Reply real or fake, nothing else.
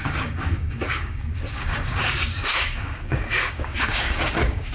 fake